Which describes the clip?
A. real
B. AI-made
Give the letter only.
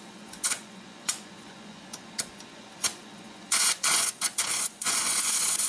B